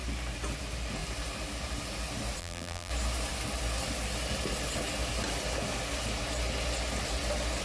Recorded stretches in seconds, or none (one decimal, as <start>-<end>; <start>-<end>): 0.0-2.4; 2.9-7.6